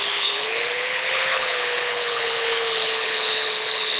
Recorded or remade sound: remade